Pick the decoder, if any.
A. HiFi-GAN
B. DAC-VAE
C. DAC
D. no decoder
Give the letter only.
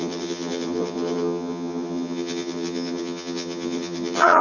A